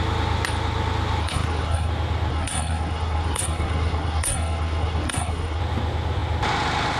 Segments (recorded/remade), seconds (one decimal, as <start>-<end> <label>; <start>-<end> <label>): 0.0-1.2 recorded; 1.2-1.9 remade; 1.9-2.3 recorded; 2.3-5.6 remade; 5.6-7.0 recorded